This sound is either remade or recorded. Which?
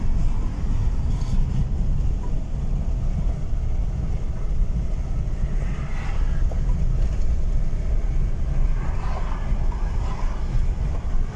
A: recorded